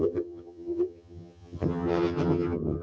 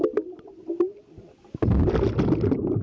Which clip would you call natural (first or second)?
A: second